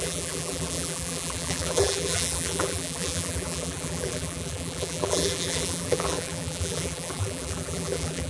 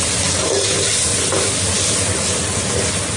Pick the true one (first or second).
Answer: second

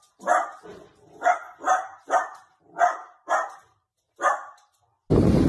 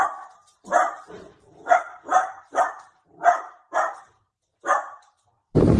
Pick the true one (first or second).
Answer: first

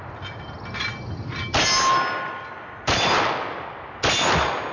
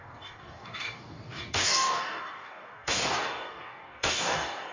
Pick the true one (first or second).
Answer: first